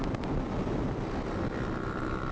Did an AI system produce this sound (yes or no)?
no